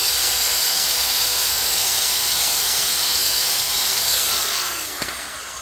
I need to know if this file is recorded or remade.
remade